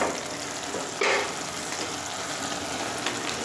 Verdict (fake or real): real